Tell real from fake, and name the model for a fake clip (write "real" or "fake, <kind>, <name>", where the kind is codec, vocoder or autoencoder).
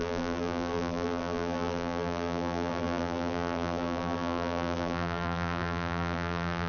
fake, vocoder, BigVGAN v2